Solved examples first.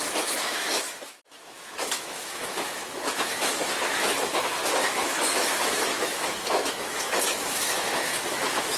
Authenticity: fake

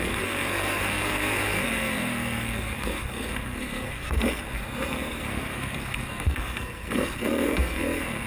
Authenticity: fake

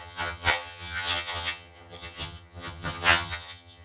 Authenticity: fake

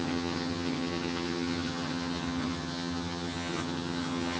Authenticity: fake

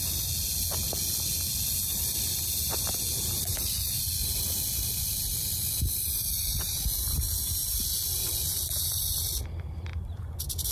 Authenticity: real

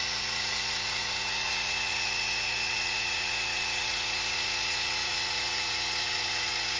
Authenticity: fake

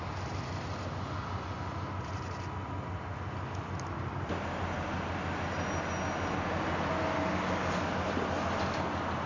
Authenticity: real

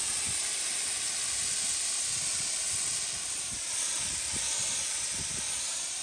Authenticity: real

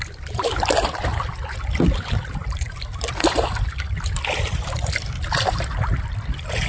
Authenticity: fake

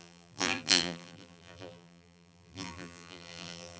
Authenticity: fake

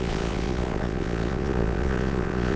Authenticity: fake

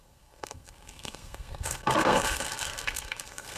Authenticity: fake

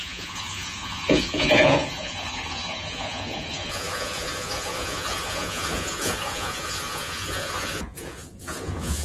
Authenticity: fake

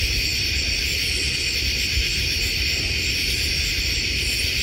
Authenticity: real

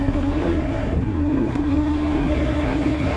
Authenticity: fake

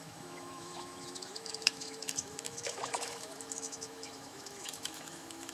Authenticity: fake